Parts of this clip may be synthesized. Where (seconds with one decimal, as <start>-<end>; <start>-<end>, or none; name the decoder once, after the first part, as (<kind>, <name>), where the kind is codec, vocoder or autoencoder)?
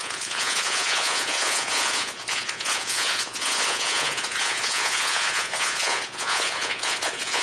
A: 0.0-7.4 (vocoder, Vocos)